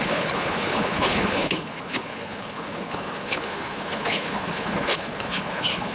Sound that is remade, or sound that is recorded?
remade